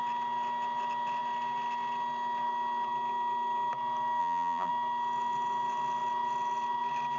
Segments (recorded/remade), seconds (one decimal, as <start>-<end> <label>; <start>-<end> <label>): 0.0-4.2 recorded; 4.2-4.7 remade; 4.7-7.2 recorded